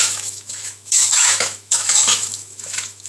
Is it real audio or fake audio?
fake